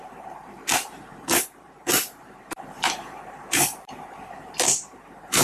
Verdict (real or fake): fake